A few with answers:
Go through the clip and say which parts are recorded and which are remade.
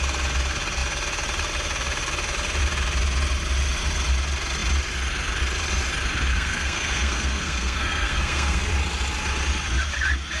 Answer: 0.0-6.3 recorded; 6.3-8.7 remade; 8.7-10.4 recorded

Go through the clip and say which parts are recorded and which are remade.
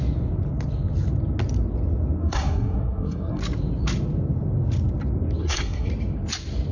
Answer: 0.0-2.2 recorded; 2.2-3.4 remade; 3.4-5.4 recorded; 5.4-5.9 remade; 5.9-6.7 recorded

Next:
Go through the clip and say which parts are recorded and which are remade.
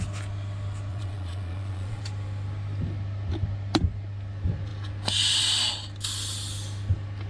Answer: 0.0-0.9 recorded; 0.9-2.0 remade; 2.0-7.3 recorded